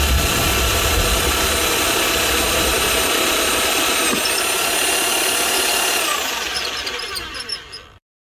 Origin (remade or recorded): recorded